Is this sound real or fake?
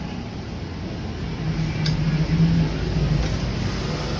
real